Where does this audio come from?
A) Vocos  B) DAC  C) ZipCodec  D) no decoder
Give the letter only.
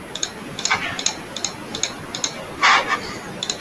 D